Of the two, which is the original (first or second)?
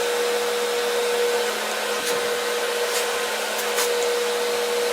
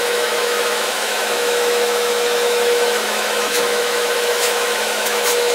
first